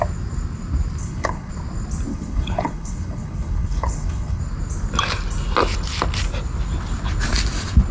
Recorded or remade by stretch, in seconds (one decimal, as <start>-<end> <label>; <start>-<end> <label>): 0.0-1.0 recorded; 1.0-1.5 remade; 1.5-2.1 recorded; 2.1-4.4 remade; 4.4-7.9 recorded